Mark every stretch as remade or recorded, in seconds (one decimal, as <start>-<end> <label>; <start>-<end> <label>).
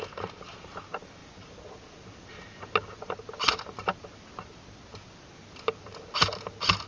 0.0-6.9 recorded